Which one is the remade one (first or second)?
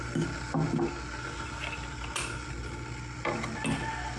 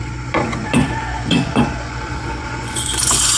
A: second